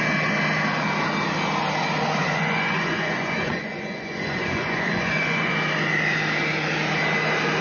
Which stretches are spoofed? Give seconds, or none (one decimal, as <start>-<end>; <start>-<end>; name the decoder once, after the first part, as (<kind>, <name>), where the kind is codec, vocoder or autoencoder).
2.2-5.5 (vocoder, Vocos)